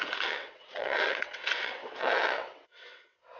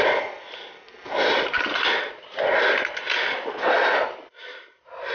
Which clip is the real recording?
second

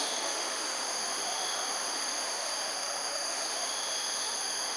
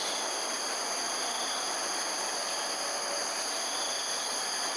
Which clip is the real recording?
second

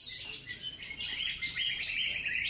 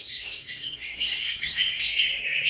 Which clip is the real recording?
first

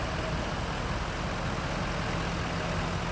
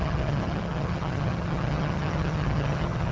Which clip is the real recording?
first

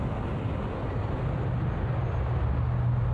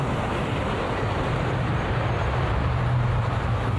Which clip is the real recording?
first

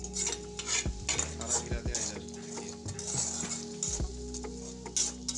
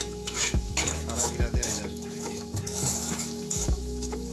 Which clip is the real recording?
first